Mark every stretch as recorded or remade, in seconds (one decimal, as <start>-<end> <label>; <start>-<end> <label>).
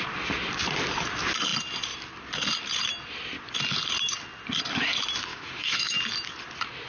0.0-5.3 recorded; 5.3-6.0 remade; 6.0-6.9 recorded